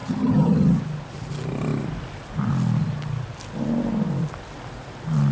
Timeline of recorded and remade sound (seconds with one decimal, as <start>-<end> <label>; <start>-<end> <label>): 0.0-0.8 remade; 0.8-5.3 recorded